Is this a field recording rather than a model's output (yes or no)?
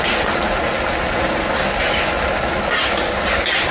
yes